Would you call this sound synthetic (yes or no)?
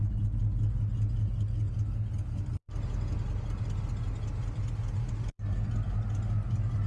no